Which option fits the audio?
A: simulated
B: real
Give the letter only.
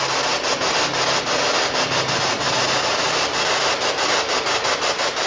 B